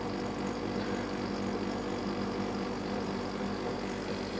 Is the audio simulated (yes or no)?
yes